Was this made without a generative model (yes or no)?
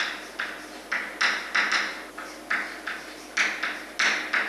yes